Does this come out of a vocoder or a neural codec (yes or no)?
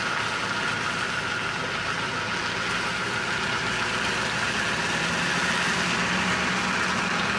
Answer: no